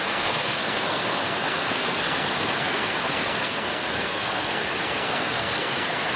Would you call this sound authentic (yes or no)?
no